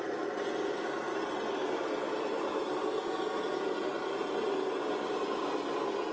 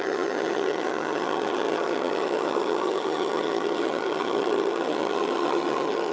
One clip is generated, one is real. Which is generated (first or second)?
second